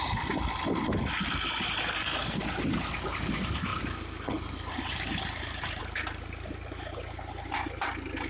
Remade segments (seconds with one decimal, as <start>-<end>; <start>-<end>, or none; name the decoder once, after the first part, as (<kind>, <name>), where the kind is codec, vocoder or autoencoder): 1.9-2.4 (codec, SNAC)